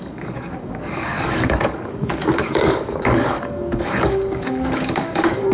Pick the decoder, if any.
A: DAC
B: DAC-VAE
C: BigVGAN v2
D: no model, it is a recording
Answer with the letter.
A